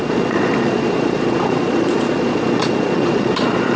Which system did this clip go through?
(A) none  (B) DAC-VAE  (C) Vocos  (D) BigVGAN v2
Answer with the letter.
C